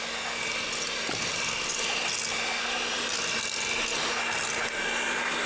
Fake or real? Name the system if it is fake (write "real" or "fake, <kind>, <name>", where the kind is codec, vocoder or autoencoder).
real